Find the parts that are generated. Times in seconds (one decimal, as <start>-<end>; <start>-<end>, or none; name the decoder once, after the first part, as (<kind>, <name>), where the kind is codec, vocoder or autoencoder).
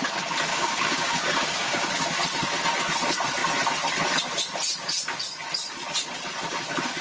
0.5-1.9 (codec, DAC)